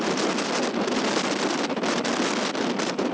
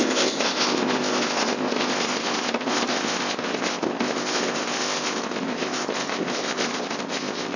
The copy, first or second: second